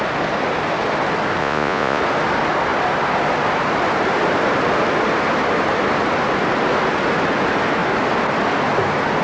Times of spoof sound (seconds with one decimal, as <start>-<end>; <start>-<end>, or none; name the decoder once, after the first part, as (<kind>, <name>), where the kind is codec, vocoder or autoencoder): 1.4-2.0 (vocoder, Vocos)